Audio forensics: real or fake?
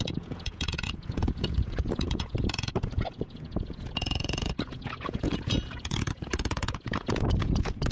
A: fake